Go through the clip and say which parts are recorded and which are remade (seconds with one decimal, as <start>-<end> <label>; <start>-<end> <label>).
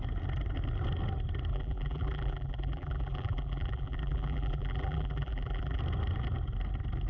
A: 0.0-1.5 recorded; 1.5-5.8 remade; 5.8-7.1 recorded